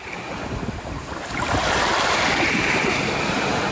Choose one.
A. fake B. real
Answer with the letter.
B